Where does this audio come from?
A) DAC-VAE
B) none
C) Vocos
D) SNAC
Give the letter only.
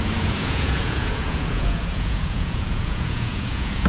C